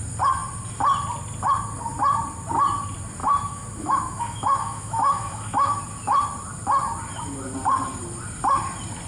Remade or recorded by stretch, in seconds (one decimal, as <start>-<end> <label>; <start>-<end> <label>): 0.0-3.2 recorded; 3.2-5.8 remade; 5.8-9.1 recorded